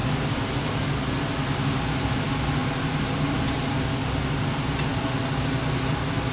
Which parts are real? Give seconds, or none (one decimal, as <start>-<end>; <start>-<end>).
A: 0.0-6.3